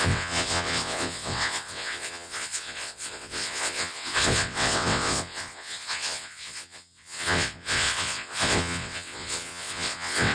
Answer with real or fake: fake